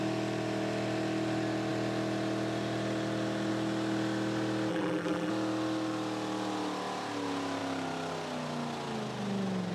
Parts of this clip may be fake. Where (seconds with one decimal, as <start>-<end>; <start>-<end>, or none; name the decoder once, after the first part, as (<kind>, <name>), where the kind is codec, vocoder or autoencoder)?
4.7-5.3 (vocoder, BigVGAN v2)